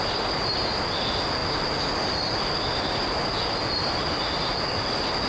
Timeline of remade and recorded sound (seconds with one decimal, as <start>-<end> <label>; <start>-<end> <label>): 0.0-5.3 recorded